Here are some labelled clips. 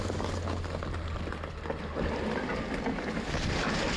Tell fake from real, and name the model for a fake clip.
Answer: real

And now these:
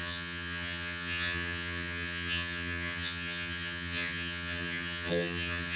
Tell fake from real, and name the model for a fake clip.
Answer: fake, vocoder, HiFi-GAN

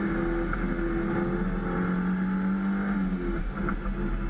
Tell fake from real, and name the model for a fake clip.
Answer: real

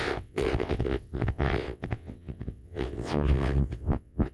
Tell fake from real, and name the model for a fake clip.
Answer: fake, vocoder, WaveNeXt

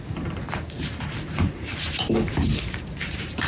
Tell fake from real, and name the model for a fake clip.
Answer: fake, vocoder, BigVGAN v2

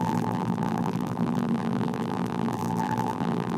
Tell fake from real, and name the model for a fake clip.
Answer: fake, vocoder, BigVGAN v2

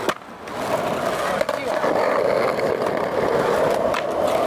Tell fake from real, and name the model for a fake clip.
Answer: real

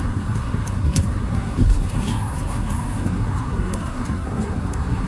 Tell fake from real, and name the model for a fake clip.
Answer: fake, codec, SNAC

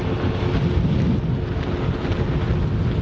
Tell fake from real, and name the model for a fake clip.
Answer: real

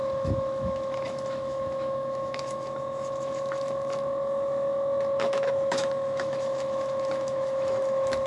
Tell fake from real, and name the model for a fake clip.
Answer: fake, autoencoder, DAC-VAE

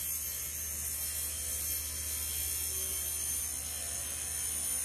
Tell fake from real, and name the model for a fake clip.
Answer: real